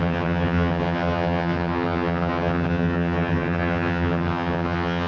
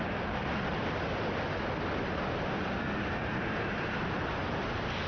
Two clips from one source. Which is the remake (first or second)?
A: first